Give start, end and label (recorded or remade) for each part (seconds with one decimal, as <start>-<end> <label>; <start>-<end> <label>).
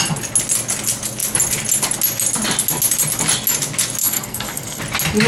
0.0-4.0 recorded; 4.0-4.8 remade; 4.8-5.3 recorded